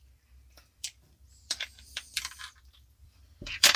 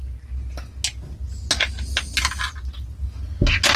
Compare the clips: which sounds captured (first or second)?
second